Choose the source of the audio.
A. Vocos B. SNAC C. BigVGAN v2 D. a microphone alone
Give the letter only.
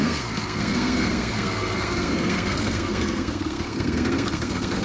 B